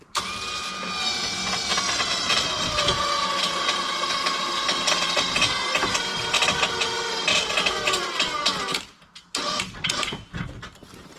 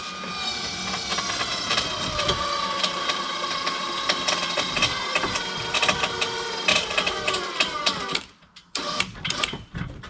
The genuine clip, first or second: first